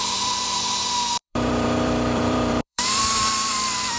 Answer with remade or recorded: remade